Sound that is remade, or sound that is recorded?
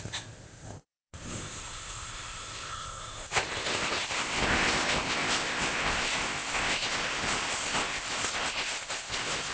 remade